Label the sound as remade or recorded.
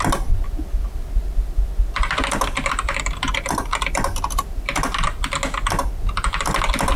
recorded